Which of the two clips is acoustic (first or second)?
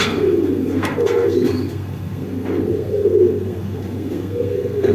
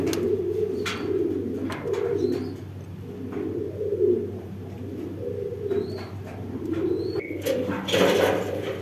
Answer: second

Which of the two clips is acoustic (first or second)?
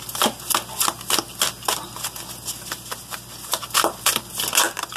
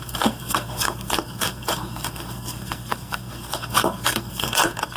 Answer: first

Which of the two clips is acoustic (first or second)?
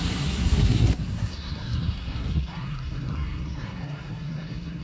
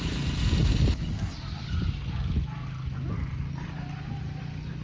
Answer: second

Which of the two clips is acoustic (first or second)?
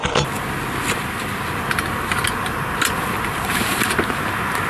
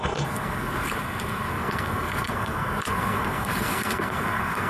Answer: first